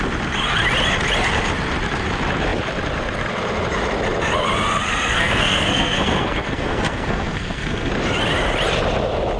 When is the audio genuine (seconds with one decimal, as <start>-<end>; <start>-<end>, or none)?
0.0-5.1; 7.9-9.4